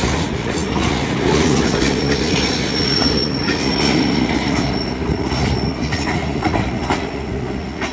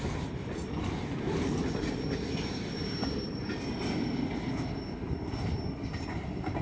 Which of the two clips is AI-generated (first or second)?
first